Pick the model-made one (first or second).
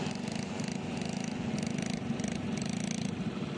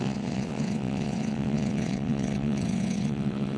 second